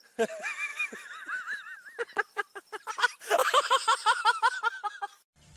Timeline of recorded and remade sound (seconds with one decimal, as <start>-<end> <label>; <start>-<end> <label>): 0.0-3.4 recorded; 3.4-4.9 remade; 4.9-5.6 recorded